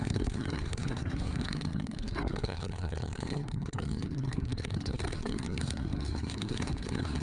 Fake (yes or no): yes